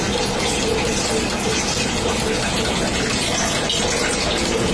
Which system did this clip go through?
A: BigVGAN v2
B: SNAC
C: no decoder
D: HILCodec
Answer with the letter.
C